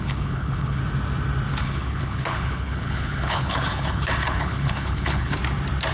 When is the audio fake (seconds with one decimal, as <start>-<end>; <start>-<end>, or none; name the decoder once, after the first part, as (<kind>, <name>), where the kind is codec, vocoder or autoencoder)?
0.0-0.8 (codec, HILCodec); 1.6-5.4